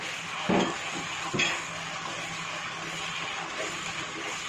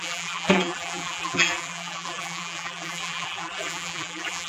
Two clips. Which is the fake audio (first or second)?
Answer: second